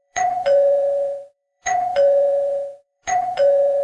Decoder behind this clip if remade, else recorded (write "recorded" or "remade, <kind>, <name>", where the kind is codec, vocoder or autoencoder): remade, vocoder, Vocos